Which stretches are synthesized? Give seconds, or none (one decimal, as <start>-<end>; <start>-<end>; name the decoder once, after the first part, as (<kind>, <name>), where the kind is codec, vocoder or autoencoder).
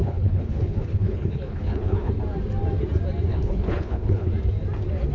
0.0-2.1 (codec, HILCodec); 3.3-4.3